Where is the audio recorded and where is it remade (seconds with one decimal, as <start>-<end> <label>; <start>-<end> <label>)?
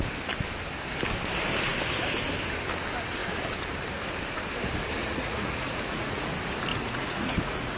0.0-5.0 recorded; 5.0-6.3 remade; 6.3-6.7 recorded; 6.7-7.8 remade